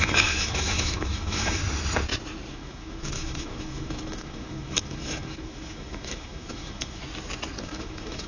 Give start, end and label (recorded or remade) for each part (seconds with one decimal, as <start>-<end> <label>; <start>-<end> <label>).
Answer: 0.0-1.6 remade; 1.6-2.5 recorded; 2.5-7.0 remade; 7.0-7.6 recorded; 7.6-8.3 remade